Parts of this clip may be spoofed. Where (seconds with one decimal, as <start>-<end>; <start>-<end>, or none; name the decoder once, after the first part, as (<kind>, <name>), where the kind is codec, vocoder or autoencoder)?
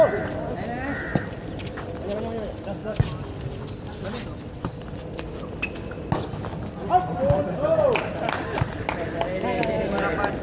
none